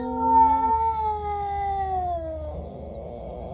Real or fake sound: real